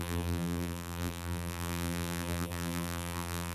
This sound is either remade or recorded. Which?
remade